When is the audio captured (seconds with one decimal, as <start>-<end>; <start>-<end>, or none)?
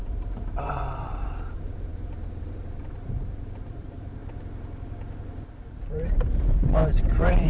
4.2-5.8